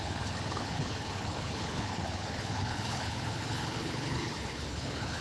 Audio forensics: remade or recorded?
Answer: remade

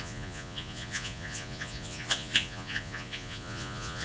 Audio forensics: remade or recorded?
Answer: remade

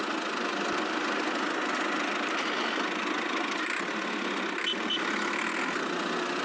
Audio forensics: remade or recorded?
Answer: recorded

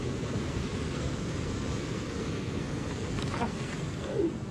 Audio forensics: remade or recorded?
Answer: remade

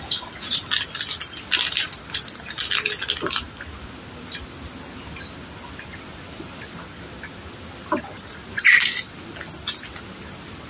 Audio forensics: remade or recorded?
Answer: recorded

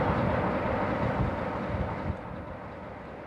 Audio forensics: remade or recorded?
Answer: recorded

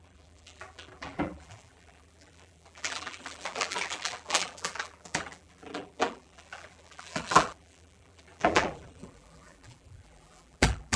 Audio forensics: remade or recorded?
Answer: remade